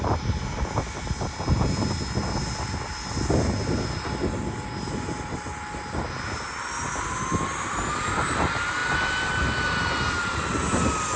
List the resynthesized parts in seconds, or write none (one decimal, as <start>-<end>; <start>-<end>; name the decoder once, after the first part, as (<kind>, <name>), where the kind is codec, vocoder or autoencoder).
none